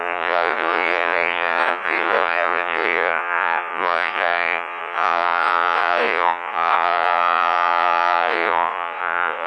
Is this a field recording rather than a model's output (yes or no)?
no